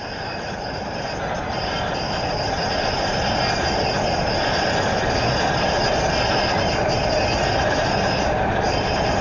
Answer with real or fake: real